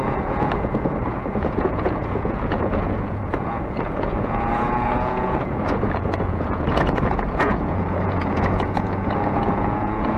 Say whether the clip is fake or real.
fake